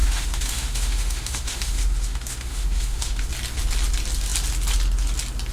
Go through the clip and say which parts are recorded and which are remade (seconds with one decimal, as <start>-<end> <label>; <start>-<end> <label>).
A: 0.0-3.3 remade; 3.3-5.5 recorded